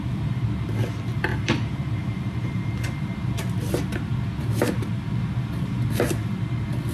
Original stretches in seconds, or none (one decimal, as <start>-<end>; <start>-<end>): 0.0-1.3; 2.7-6.9